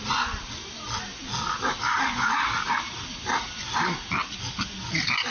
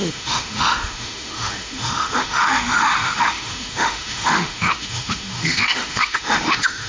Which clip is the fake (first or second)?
second